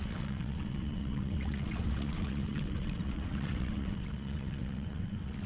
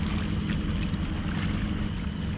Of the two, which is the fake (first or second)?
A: first